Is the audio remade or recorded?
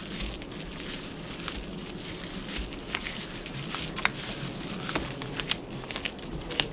recorded